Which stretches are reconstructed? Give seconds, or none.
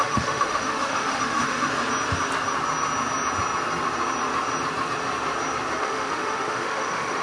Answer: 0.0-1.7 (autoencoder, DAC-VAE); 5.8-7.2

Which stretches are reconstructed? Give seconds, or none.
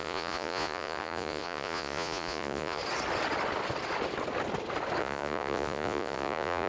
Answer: 0.0-2.8 (vocoder, Vocos); 5.0-6.7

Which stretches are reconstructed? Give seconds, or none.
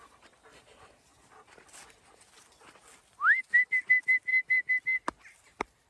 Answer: none